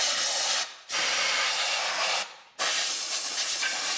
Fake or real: real